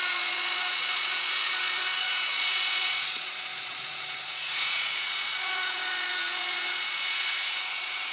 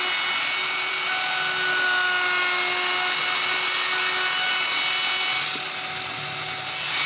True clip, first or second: second